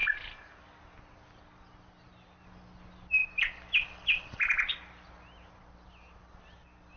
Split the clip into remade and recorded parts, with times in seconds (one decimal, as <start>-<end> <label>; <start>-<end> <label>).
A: 0.0-7.0 recorded